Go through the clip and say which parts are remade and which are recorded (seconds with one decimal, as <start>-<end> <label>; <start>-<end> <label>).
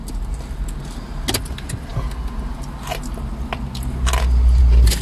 0.0-5.0 recorded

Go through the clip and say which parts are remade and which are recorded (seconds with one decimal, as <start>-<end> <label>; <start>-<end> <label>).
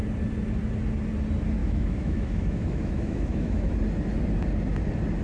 0.0-1.6 recorded; 1.6-3.7 remade; 3.7-5.2 recorded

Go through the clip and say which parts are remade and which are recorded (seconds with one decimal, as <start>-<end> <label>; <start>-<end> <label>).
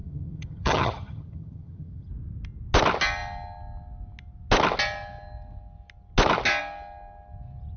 0.0-2.1 remade; 2.1-7.8 recorded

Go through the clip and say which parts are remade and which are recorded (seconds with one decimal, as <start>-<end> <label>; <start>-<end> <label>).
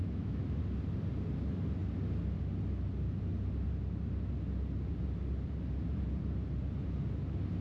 0.0-0.6 remade; 0.6-7.6 recorded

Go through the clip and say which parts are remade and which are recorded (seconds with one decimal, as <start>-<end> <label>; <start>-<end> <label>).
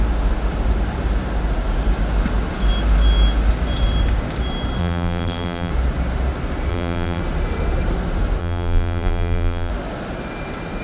0.0-4.8 recorded; 4.8-5.7 remade; 5.7-6.7 recorded; 6.7-7.2 remade; 7.2-8.4 recorded; 8.4-9.7 remade; 9.7-10.8 recorded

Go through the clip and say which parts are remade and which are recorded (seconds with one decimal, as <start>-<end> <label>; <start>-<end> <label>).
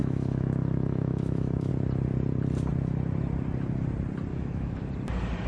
0.0-1.7 remade; 1.7-4.3 recorded; 4.3-4.9 remade; 4.9-5.5 recorded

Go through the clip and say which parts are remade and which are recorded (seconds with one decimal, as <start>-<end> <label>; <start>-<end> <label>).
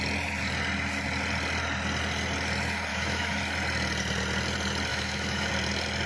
0.0-2.9 recorded; 2.9-3.4 remade; 3.4-4.9 recorded; 4.9-5.5 remade; 5.5-6.1 recorded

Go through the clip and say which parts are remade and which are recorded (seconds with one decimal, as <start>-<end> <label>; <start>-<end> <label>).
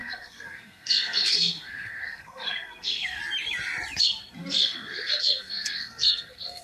0.0-3.2 remade; 3.2-4.0 recorded; 4.0-6.6 remade